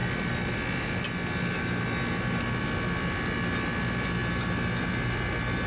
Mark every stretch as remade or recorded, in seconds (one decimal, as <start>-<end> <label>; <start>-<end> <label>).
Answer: 0.0-5.7 recorded